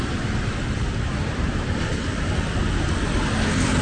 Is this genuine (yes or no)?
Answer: yes